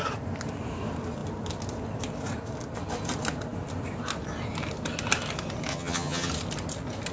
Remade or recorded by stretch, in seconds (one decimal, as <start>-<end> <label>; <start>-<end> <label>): 0.0-5.7 recorded; 5.7-6.3 remade; 6.3-7.1 recorded